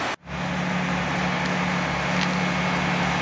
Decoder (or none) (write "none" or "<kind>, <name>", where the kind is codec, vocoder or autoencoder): none